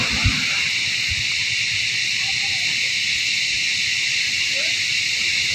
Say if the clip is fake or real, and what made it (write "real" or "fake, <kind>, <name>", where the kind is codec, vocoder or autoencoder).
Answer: real